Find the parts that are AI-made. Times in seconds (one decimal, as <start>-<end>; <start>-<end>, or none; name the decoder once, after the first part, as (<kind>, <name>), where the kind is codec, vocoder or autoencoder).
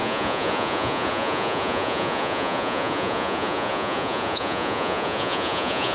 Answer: 0.0-5.9 (vocoder, Vocos)